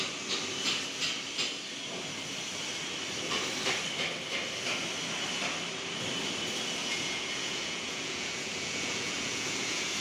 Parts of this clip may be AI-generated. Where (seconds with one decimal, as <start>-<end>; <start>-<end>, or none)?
6.8-10.0